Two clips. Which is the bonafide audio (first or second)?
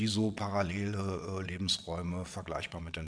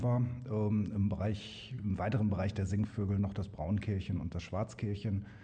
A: second